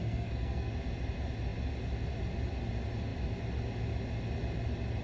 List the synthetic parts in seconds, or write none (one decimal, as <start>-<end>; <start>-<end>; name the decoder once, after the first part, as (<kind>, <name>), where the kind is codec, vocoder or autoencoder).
0.0-0.7 (codec, SNAC)